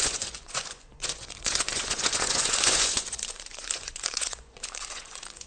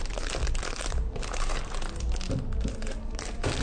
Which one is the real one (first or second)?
second